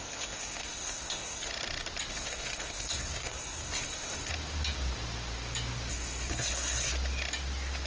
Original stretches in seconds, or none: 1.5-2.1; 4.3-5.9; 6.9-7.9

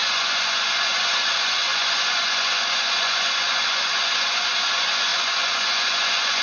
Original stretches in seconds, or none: none

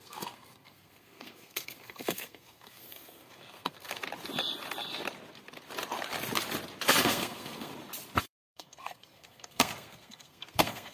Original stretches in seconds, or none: 4.0-7.0; 7.7-8.2

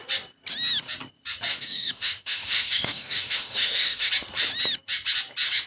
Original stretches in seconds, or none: 0.0-1.5; 4.1-5.7

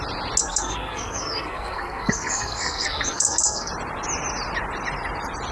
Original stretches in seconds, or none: 0.0-0.4; 3.7-5.5

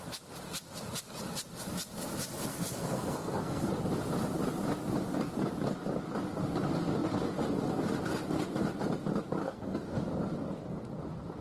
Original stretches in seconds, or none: 0.0-2.5; 3.7-9.4; 10.0-11.4